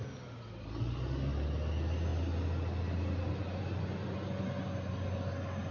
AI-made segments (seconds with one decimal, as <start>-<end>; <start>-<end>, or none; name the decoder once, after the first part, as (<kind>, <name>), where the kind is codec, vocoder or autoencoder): none

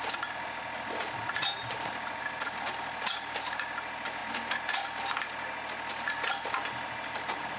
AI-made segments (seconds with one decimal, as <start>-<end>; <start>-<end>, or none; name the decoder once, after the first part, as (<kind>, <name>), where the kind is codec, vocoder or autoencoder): 0.0-4.2 (vocoder, BigVGAN v2); 5.9-7.6

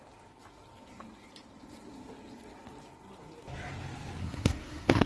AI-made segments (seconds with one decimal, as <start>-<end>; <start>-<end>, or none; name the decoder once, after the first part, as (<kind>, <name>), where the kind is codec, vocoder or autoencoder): 4.2-5.1 (codec, SNAC)

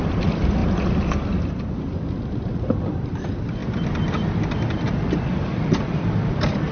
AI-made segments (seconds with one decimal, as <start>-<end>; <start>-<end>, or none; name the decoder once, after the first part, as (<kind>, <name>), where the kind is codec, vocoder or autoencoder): 0.0-0.6 (vocoder, BigVGAN v2); 1.5-3.6; 4.2-6.7